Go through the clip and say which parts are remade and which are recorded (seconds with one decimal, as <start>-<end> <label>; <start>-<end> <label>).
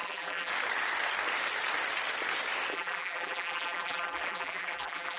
0.0-0.5 remade; 0.5-2.7 recorded; 2.7-5.2 remade